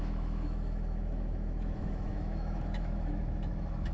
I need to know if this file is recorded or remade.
remade